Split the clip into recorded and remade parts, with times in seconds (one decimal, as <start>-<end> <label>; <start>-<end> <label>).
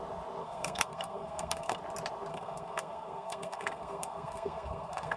0.0-0.4 recorded; 0.4-1.8 remade; 1.8-2.3 recorded; 2.3-5.2 remade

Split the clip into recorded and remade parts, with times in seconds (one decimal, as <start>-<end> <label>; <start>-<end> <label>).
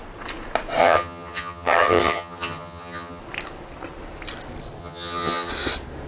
0.0-0.8 recorded; 0.8-3.2 remade; 3.2-4.8 recorded; 4.8-5.5 remade; 5.5-6.1 recorded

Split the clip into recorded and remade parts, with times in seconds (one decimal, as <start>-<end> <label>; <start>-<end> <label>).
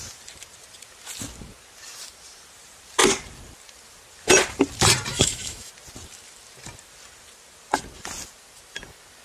0.0-5.1 recorded; 5.1-5.7 remade; 5.7-9.2 recorded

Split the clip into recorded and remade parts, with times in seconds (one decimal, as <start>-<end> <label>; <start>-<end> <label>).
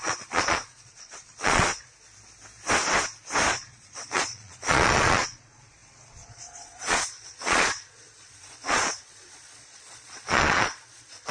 0.0-1.9 remade; 1.9-3.5 recorded; 3.5-11.3 remade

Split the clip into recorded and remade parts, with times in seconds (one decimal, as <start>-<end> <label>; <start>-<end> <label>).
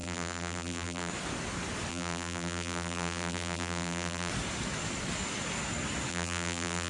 0.0-1.1 remade; 1.1-1.9 recorded; 1.9-4.3 remade; 4.3-6.1 recorded; 6.1-6.9 remade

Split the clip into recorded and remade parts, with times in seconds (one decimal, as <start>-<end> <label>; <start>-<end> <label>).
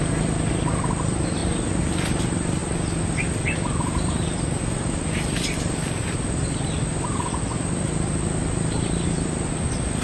0.0-10.0 recorded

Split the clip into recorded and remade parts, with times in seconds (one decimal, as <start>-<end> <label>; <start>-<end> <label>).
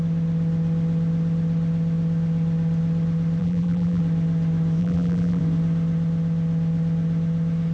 0.0-3.4 recorded; 3.4-4.0 remade; 4.0-4.8 recorded; 4.8-5.4 remade; 5.4-7.7 recorded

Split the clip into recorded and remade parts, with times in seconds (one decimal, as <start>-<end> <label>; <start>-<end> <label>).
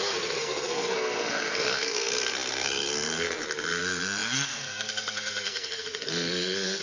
0.0-6.8 remade